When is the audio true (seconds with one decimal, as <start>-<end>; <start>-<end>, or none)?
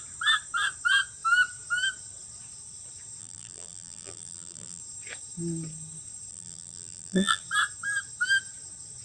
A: 0.0-3.2; 4.8-6.3; 7.4-9.0